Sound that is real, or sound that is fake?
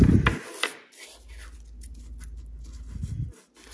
real